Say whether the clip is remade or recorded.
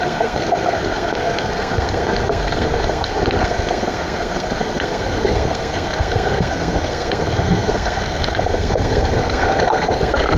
remade